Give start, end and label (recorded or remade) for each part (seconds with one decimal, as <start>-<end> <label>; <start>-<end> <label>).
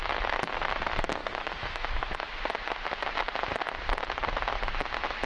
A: 0.0-1.2 recorded; 1.2-2.4 remade; 2.4-5.3 recorded